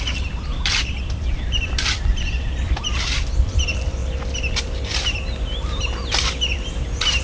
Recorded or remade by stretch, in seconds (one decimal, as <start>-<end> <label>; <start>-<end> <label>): 0.0-4.0 remade; 4.0-7.2 recorded

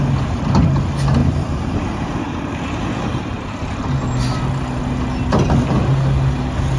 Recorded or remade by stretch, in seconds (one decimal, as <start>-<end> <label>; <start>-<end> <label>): 0.0-1.2 recorded; 1.2-3.9 remade; 3.9-6.8 recorded

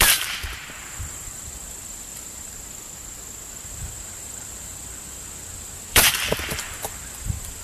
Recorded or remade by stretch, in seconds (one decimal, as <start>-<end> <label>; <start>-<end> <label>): 0.0-7.6 remade

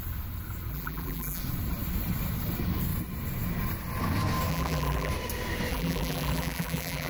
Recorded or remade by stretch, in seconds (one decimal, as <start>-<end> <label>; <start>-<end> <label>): 0.0-0.7 recorded; 0.7-1.4 remade; 1.4-4.5 recorded; 4.5-5.1 remade; 5.1-5.7 recorded; 5.7-7.1 remade

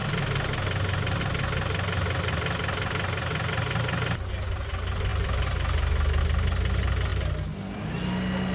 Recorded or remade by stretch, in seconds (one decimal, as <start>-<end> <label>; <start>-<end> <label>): 0.0-7.1 recorded; 7.1-7.9 remade; 7.9-8.5 recorded

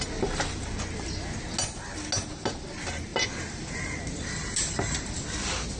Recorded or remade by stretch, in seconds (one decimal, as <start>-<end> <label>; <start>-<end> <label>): 0.0-3.1 recorded; 3.1-5.2 remade; 5.2-5.8 recorded

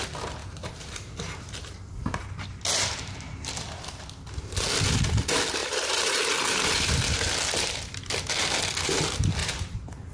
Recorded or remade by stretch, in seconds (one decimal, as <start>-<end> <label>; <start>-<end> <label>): 0.0-0.4 recorded; 0.4-1.7 remade; 1.7-5.6 recorded; 5.6-6.9 remade; 6.9-9.4 recorded; 9.4-10.1 remade

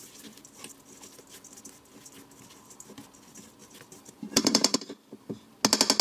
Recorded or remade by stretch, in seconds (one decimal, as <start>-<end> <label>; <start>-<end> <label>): 0.0-3.6 recorded; 3.6-5.5 remade; 5.5-6.0 recorded